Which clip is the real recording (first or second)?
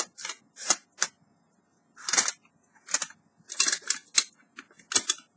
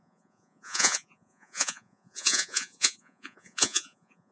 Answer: first